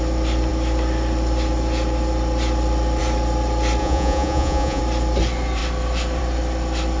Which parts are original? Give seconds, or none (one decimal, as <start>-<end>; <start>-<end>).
0.0-3.8; 4.8-7.0